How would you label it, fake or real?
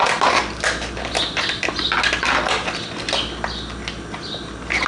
real